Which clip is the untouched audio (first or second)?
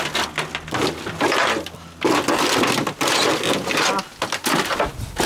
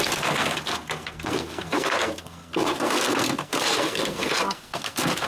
first